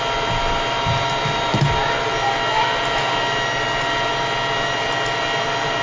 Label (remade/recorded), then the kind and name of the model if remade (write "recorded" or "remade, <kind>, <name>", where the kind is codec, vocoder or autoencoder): recorded